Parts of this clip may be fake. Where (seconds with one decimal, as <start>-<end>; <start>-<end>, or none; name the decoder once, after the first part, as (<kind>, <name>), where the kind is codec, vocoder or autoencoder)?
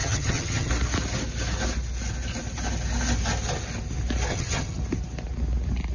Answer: 0.0-0.7 (vocoder, HiFi-GAN); 4.3-4.8